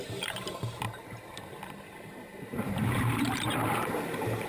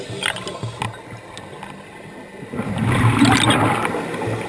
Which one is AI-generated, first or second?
first